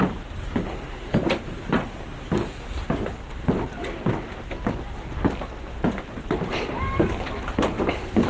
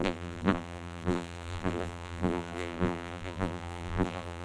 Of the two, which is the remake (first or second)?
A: second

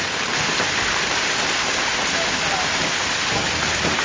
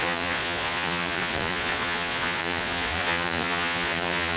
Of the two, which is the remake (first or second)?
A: second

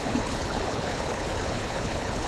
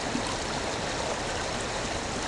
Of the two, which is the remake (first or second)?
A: first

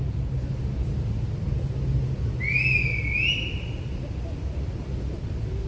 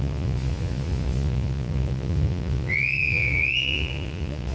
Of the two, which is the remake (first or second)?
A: second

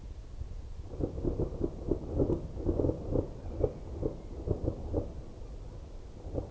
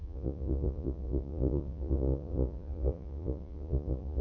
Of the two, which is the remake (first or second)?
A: second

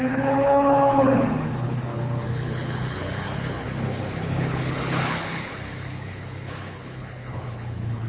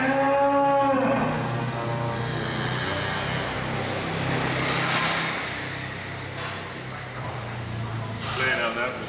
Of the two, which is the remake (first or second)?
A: first